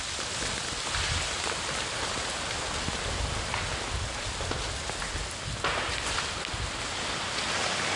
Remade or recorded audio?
recorded